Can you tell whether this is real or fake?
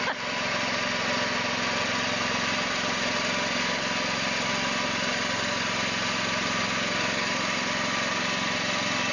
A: real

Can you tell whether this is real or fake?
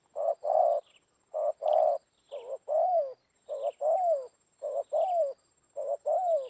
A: real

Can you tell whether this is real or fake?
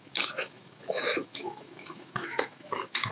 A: fake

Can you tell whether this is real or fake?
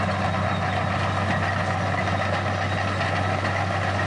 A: real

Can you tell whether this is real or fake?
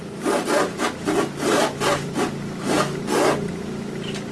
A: real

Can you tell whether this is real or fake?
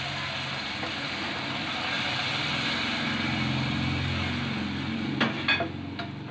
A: real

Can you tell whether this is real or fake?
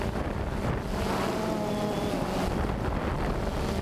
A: real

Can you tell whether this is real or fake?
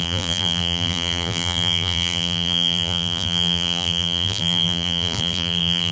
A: fake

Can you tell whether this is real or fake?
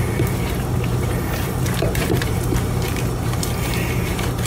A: fake